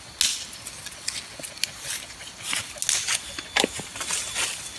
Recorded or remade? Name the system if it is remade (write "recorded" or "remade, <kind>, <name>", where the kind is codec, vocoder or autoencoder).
recorded